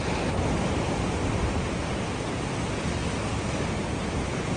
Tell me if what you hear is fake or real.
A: real